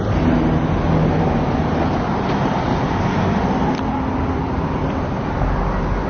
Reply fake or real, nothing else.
real